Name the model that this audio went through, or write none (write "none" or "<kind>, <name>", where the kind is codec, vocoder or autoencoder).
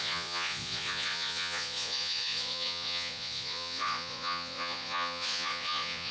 vocoder, Vocos